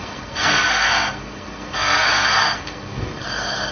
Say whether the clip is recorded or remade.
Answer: remade